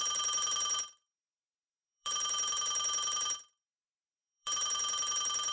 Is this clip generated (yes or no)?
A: yes